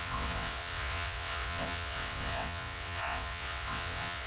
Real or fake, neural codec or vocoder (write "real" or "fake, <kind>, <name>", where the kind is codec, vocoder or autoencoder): fake, vocoder, WaveNeXt